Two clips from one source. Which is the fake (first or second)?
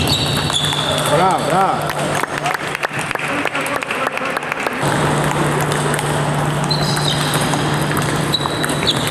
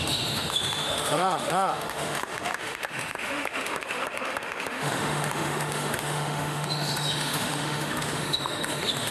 second